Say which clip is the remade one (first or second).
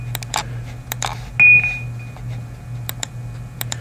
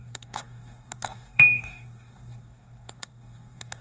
second